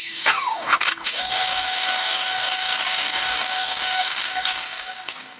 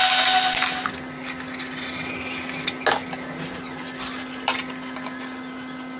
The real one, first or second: second